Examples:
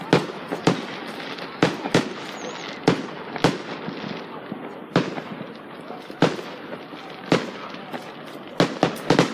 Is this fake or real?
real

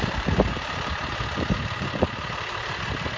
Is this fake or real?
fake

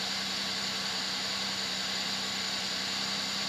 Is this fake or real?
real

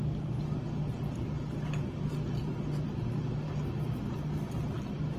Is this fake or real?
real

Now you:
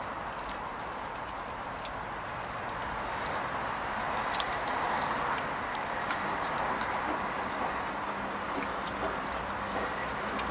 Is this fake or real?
real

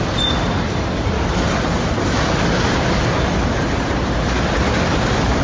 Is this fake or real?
fake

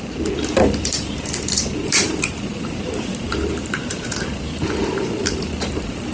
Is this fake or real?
fake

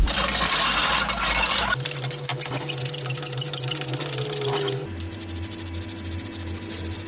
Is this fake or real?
real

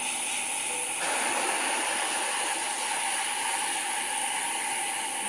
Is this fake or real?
real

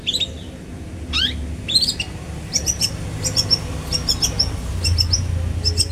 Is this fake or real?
real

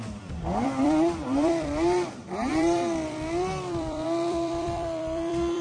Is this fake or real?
fake